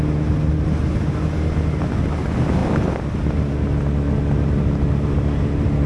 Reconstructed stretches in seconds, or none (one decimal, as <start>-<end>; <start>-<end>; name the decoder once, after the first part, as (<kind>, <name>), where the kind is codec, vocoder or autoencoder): none